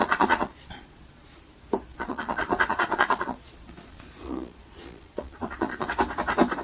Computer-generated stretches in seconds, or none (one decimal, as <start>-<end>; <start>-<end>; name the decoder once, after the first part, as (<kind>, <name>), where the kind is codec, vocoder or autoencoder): 0.0-1.5 (vocoder, Vocos); 1.9-5.9